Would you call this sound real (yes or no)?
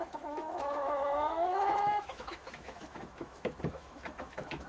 no